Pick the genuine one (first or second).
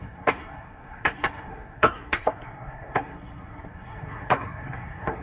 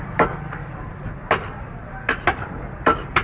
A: second